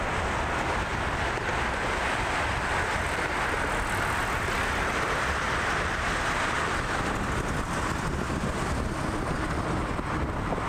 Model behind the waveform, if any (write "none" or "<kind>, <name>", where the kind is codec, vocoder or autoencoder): none